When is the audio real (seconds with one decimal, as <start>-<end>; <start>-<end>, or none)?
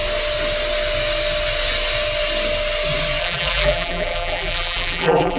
0.0-3.2